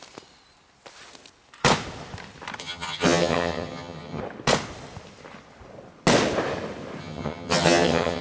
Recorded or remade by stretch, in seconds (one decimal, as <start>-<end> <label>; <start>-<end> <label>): 0.0-2.6 recorded; 2.6-4.2 remade; 4.2-7.0 recorded; 7.0-8.2 remade